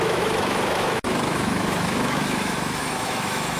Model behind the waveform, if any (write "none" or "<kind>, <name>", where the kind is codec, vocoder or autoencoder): autoencoder, DAC-VAE